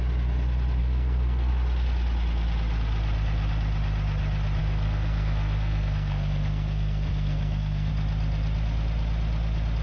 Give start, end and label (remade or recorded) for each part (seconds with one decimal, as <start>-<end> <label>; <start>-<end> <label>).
0.0-0.8 recorded; 0.8-1.5 remade; 1.5-4.6 recorded; 4.6-7.9 remade; 7.9-9.8 recorded